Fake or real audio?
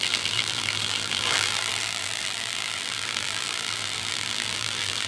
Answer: fake